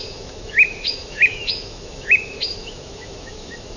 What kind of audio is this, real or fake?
fake